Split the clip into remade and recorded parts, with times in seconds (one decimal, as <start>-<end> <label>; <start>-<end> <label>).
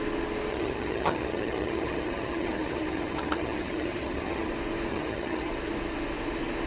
0.0-0.5 recorded; 0.5-4.5 remade; 4.5-4.9 recorded; 4.9-5.5 remade; 5.5-6.7 recorded